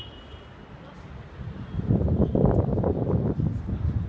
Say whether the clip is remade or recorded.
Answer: recorded